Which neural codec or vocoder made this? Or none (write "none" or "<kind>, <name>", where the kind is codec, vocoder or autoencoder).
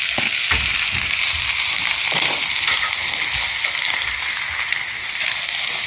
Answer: none